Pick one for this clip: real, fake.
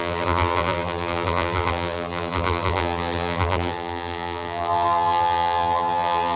fake